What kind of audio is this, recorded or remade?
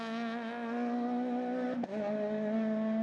recorded